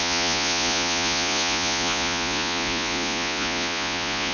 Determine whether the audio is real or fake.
fake